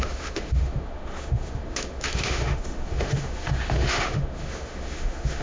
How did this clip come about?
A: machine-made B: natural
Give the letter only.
A